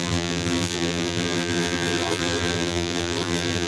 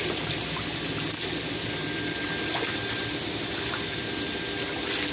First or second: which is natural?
second